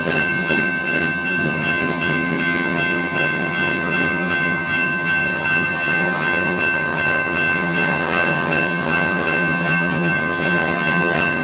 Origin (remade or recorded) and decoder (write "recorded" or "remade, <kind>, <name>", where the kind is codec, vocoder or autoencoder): remade, vocoder, HiFi-GAN